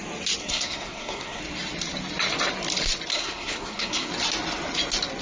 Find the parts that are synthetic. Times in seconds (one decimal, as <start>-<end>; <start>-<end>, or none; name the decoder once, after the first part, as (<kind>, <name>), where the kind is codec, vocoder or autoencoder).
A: 0.4-1.4 (codec, SNAC); 3.1-4.1